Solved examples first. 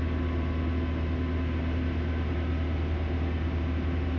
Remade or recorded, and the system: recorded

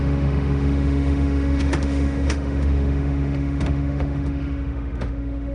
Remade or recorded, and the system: remade, autoencoder, DAC-VAE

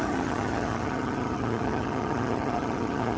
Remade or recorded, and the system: remade, vocoder, HiFi-GAN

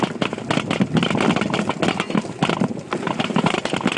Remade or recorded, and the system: recorded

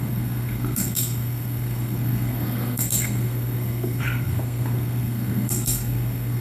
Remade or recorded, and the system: remade, codec, SNAC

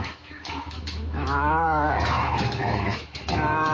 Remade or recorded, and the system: remade, autoencoder, DAC-VAE